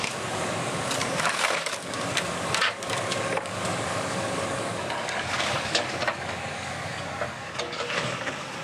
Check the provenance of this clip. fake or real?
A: fake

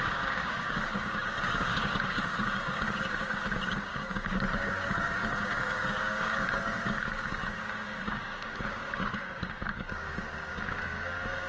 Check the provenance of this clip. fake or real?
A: fake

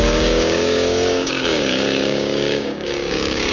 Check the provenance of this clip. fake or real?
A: fake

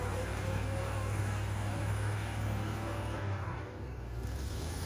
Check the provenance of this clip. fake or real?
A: fake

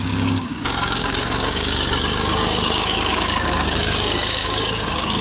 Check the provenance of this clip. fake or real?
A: fake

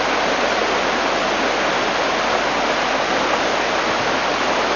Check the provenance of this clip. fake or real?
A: real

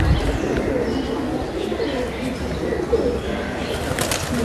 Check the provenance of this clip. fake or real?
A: real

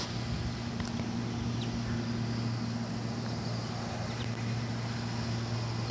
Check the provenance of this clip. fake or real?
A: real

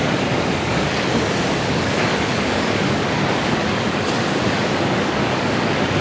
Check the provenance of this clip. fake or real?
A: fake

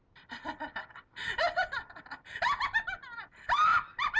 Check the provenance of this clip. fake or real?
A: real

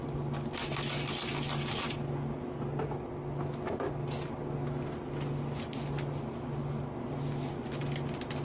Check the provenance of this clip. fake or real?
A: real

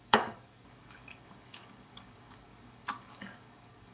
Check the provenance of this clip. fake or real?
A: fake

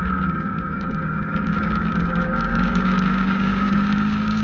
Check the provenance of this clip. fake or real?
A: fake